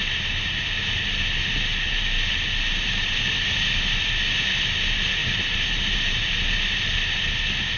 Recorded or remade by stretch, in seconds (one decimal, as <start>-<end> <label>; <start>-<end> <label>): 0.0-2.7 recorded; 2.7-3.6 remade; 3.6-5.2 recorded; 5.2-6.2 remade; 6.2-7.8 recorded

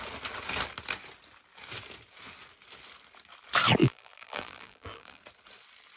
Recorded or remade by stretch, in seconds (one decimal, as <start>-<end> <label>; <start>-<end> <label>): 0.0-3.8 recorded; 3.8-5.2 remade; 5.2-6.0 recorded

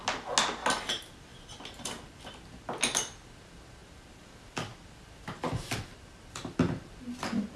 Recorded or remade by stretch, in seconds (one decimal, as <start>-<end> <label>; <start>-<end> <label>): 0.0-7.6 recorded

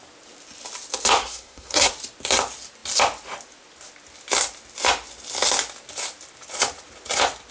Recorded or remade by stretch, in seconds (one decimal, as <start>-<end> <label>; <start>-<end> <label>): 0.0-1.2 recorded; 1.2-1.9 remade; 1.9-7.5 recorded

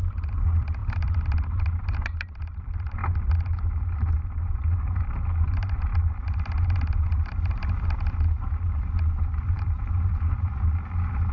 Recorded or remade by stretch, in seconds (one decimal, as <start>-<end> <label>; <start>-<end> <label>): 0.0-3.0 remade; 3.0-4.1 recorded; 4.1-11.3 remade